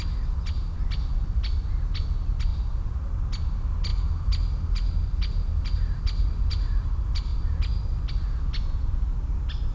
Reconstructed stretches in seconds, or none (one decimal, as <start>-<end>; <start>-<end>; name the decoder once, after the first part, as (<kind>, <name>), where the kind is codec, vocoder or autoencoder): none